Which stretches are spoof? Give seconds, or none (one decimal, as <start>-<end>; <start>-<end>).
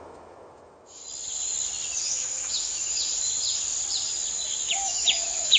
0.0-1.0; 2.0-3.1; 4.7-5.6